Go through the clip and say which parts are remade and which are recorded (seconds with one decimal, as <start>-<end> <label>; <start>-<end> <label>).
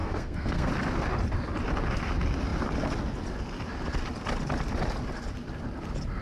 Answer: 0.0-0.7 remade; 0.7-6.2 recorded